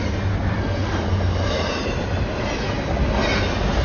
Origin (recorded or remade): recorded